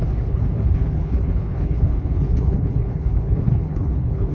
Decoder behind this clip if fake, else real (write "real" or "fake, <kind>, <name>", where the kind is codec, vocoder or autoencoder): fake, codec, HILCodec